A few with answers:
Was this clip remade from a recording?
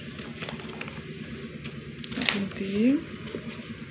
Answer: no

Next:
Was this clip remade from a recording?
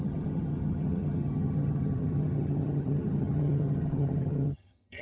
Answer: yes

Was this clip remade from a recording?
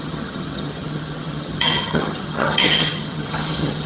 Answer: yes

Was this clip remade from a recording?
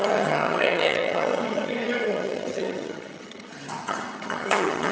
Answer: yes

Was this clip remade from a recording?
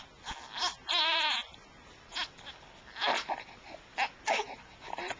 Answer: no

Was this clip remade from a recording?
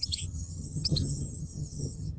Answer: yes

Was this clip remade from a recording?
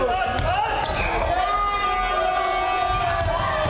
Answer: no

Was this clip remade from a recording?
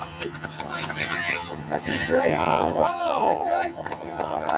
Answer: yes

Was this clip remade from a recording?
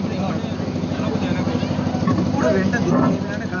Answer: no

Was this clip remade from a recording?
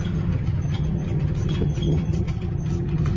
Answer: yes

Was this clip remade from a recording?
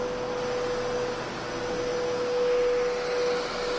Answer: no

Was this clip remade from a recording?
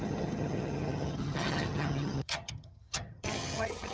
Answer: yes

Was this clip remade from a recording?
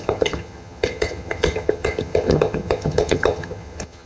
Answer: yes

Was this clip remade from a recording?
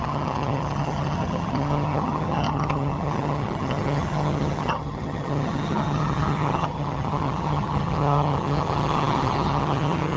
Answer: yes